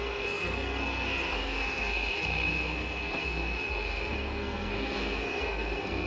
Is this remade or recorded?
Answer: remade